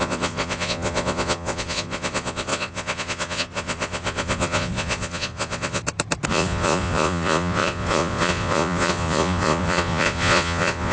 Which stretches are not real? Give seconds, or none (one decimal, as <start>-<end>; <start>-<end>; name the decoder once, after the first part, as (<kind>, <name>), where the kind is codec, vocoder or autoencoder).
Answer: 0.0-5.8 (vocoder, Vocos); 6.3-10.9